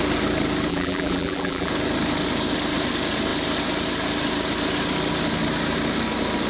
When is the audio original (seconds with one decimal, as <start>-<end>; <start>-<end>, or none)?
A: 0.0-0.7; 1.7-6.5